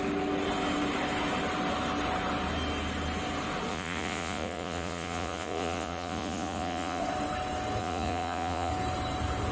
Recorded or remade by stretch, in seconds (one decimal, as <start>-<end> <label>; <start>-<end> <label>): 0.0-3.7 recorded; 3.7-7.0 remade; 7.0-7.8 recorded; 7.8-8.7 remade; 8.7-9.5 recorded